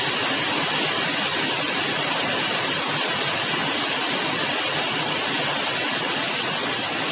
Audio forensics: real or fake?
real